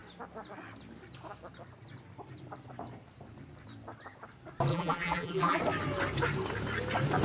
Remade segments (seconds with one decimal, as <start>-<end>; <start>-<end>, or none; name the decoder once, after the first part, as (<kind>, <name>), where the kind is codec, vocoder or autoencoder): 4.7-5.6 (vocoder, BigVGAN v2)